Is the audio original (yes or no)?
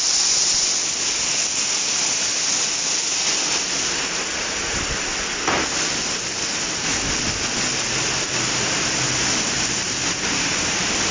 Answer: yes